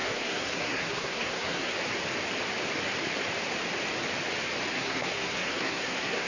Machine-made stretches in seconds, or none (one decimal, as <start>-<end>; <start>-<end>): 0.0-1.7; 4.7-6.3